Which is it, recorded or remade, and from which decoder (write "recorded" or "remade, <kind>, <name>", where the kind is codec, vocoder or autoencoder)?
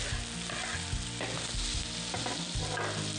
recorded